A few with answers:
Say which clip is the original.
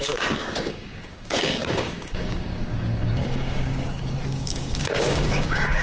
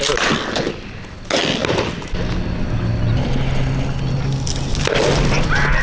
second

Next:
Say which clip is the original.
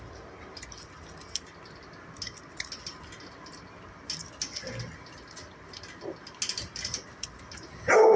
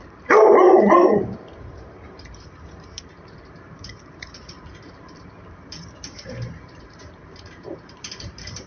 first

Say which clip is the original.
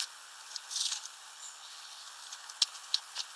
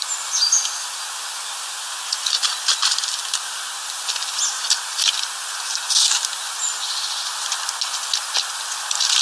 second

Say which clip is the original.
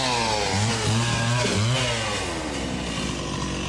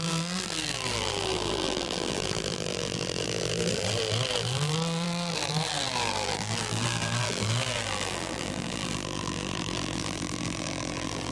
first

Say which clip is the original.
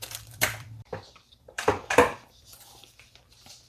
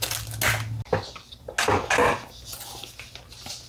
second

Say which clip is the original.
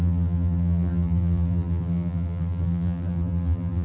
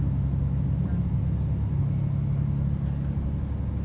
second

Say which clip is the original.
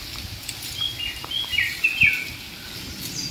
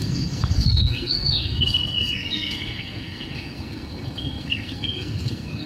first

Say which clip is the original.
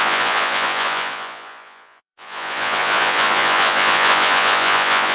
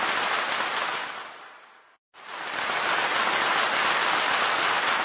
second